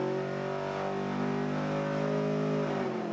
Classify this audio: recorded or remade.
recorded